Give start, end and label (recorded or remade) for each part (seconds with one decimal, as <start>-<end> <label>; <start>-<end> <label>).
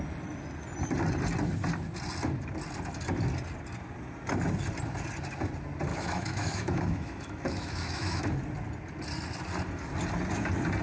0.0-5.9 recorded; 5.9-8.3 remade; 8.3-10.8 recorded